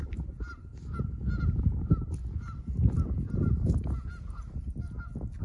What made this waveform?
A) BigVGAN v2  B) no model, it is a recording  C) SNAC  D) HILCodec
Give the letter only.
B